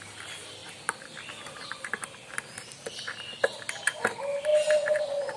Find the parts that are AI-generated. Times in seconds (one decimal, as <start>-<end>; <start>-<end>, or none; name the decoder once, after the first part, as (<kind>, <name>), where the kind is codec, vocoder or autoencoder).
none